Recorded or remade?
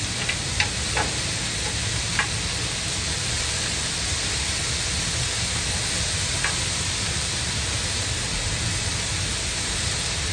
recorded